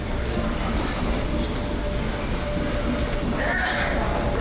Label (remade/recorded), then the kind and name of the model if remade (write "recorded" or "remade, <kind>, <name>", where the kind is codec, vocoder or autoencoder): recorded